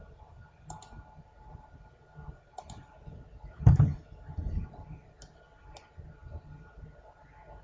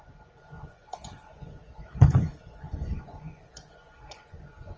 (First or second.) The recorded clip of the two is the first